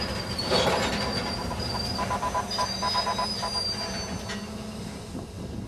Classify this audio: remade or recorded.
recorded